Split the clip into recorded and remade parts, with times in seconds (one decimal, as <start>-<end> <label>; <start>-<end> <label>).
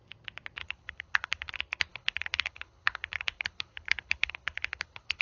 0.0-0.6 recorded; 0.6-1.5 remade; 1.5-1.9 recorded; 1.9-5.2 remade